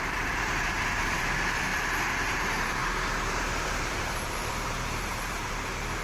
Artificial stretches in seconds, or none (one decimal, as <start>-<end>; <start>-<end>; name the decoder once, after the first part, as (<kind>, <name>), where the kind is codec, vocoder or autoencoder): 0.0-1.7 (vocoder, BigVGAN v2); 2.3-6.0